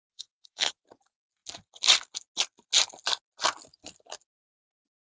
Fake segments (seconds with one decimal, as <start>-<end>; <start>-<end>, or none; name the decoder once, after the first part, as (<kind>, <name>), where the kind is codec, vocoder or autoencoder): 0.0-0.7 (codec, SNAC)